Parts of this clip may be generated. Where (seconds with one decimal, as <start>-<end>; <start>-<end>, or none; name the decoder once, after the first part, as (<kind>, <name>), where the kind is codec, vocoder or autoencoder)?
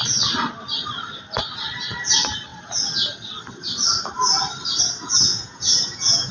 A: 5.3-6.3 (vocoder, Vocos)